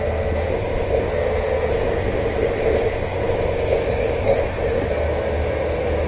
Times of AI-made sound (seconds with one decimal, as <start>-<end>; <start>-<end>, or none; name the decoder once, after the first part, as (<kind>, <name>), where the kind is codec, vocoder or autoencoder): 0.5-1.1 (codec, SNAC); 1.7-4.9